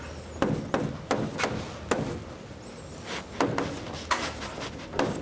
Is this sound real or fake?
real